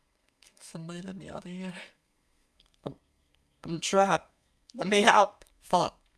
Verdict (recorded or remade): remade